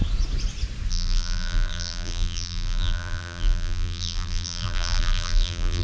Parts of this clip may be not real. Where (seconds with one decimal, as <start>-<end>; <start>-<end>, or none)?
0.9-5.8